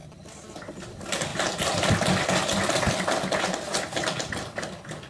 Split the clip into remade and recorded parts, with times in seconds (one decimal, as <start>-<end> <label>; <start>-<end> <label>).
0.0-5.1 recorded